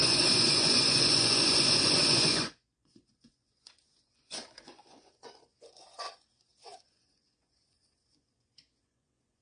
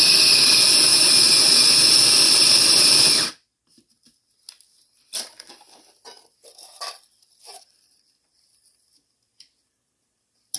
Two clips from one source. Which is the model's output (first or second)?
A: first